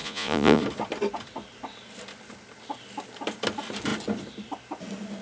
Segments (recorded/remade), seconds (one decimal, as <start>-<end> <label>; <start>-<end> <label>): 0.0-0.6 remade; 0.6-5.2 recorded